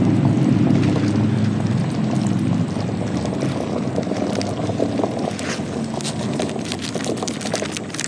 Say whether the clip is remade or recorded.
recorded